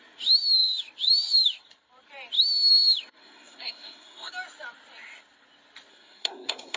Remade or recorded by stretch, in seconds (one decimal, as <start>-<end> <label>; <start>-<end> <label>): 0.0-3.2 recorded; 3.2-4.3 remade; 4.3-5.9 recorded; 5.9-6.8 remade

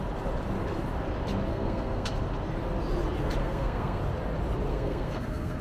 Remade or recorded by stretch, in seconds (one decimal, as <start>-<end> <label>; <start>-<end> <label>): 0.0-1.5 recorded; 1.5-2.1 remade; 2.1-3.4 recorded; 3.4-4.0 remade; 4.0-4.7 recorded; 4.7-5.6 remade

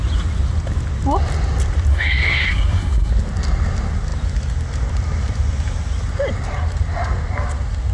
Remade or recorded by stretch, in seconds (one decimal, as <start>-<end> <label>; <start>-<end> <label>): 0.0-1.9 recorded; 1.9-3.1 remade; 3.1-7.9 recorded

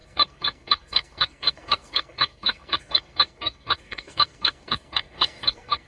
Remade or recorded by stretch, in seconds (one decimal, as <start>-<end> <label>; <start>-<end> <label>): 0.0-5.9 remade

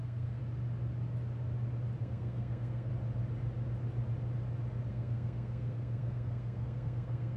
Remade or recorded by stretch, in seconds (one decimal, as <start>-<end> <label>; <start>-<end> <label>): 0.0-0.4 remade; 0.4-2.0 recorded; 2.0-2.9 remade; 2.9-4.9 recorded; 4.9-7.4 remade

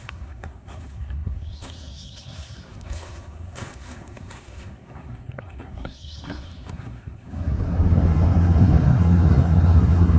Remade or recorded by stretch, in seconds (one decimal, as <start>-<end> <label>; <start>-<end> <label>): 0.0-10.2 remade

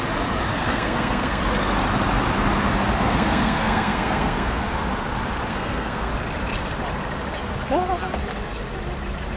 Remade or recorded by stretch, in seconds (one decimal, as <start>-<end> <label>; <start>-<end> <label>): 0.0-0.5 recorded; 0.5-1.4 remade; 1.4-3.0 recorded; 3.0-4.6 remade; 4.6-5.5 recorded; 5.5-6.1 remade; 6.1-9.4 recorded

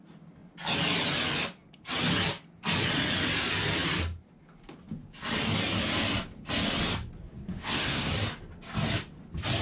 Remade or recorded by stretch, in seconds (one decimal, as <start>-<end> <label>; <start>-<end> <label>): 0.0-7.2 recorded; 7.2-8.1 remade; 8.1-9.6 recorded